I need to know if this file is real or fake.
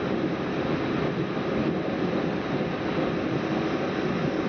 real